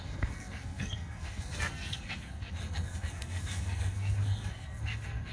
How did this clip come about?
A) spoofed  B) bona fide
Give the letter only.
A